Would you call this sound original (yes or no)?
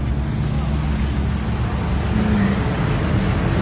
yes